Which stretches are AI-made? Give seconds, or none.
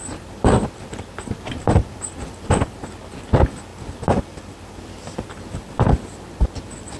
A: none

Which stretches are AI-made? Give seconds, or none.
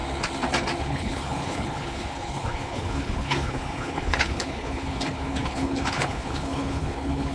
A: 0.8-7.3 (codec, HILCodec)